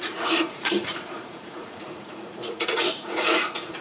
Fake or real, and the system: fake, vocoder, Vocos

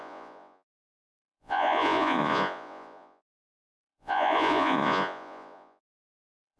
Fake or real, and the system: fake, vocoder, Vocos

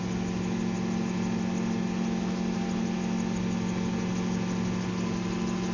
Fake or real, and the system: real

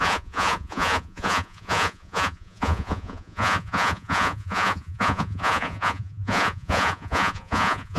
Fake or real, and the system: fake, vocoder, Vocos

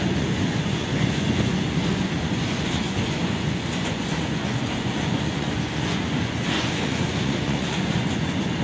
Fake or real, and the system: fake, vocoder, Vocos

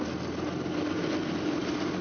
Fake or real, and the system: real